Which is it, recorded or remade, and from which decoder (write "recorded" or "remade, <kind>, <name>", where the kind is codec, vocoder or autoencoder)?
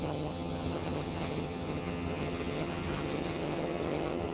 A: remade, vocoder, HiFi-GAN